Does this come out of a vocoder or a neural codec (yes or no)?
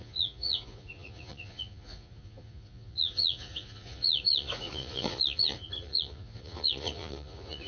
yes